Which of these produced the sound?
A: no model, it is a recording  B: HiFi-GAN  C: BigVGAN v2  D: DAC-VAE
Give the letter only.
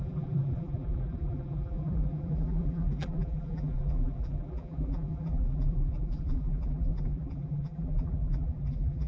C